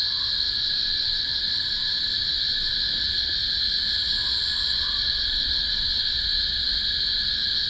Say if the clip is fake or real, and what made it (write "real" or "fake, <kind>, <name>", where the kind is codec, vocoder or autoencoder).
real